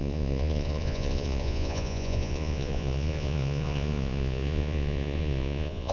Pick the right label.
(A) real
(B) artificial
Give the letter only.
B